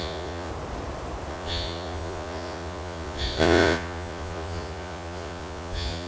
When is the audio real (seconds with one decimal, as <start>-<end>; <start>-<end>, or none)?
0.5-1.3